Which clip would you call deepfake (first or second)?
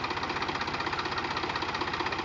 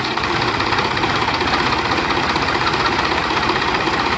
second